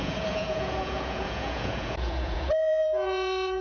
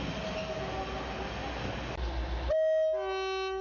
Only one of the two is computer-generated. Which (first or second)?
first